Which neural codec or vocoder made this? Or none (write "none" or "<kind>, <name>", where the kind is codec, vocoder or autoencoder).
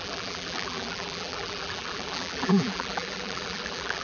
vocoder, BigVGAN v2